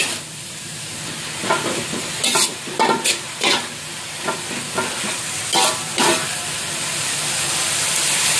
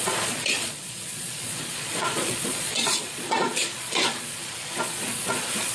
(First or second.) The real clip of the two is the first